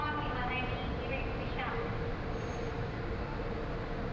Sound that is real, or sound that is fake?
real